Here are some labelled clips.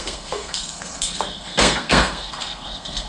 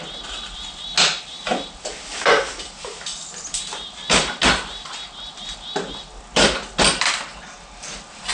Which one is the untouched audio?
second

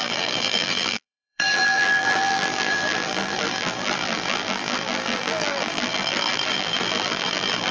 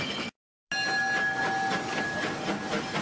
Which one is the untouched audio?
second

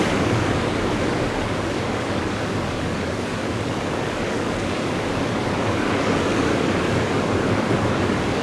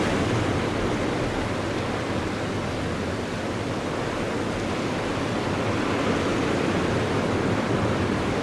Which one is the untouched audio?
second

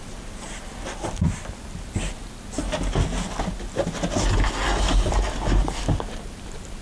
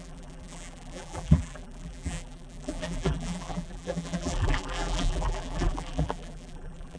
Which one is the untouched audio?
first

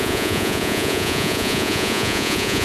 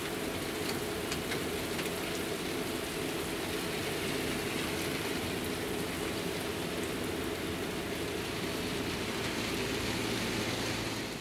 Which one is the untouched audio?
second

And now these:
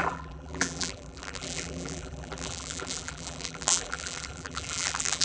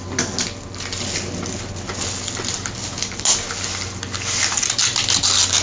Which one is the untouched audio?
second